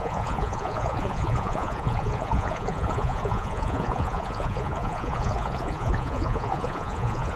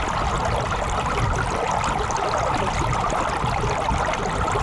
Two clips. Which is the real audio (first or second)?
second